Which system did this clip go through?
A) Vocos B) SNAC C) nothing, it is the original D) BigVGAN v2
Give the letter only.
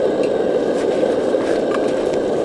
C